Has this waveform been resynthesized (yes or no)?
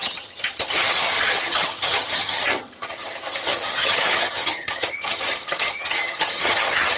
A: yes